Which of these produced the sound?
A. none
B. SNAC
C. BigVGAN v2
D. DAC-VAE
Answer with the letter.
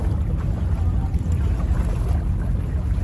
A